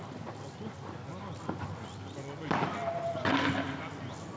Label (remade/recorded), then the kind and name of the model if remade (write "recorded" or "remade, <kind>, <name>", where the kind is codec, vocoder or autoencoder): recorded